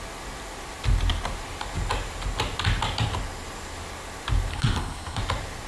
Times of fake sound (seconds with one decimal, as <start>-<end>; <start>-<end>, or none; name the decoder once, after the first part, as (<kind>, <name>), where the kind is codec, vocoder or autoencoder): 4.5-5.2 (codec, SNAC)